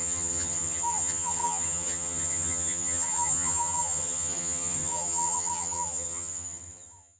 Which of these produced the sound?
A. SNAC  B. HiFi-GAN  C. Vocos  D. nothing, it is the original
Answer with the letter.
B